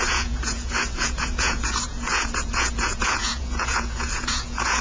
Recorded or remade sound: remade